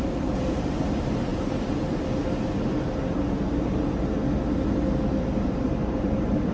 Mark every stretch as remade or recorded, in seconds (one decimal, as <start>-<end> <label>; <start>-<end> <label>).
0.0-1.3 remade; 1.3-5.2 recorded; 5.2-6.5 remade